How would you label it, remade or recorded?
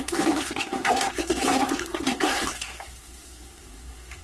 remade